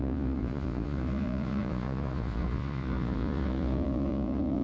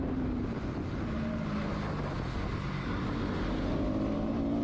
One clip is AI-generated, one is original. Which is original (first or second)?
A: second